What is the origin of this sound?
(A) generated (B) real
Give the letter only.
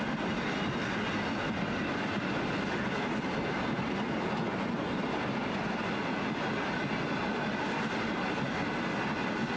B